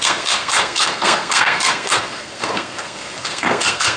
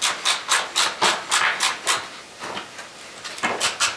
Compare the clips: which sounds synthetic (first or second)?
first